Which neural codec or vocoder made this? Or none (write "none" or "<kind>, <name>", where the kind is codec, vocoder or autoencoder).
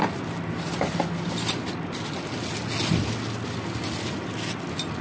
none